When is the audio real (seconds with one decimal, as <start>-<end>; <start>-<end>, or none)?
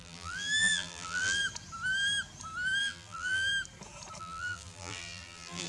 1.4-2.8; 3.5-4.2